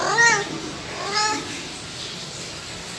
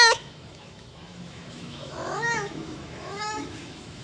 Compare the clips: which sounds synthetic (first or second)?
second